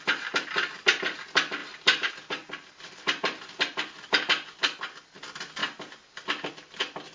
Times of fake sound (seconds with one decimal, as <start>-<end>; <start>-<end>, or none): 1.6-2.1